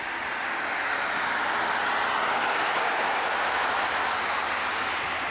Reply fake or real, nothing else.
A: real